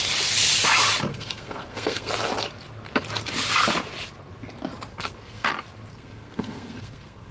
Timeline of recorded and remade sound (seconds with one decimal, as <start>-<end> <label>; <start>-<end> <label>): 0.0-1.1 recorded; 1.1-2.1 remade; 2.1-4.9 recorded; 4.9-5.5 remade; 5.5-5.9 recorded; 5.9-7.3 remade